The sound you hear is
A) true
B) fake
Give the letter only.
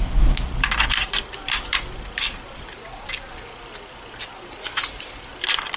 B